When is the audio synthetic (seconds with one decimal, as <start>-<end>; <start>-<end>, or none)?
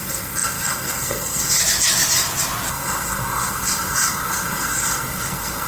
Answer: 0.0-1.6; 2.7-5.7